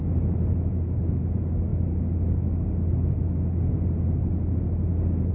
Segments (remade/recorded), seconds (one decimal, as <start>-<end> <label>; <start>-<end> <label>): 0.0-5.3 recorded